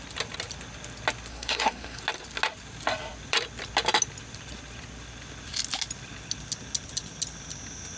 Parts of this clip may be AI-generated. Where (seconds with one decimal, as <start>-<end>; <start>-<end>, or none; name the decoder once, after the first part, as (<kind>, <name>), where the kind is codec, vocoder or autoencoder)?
1.3-2.0 (codec, SNAC)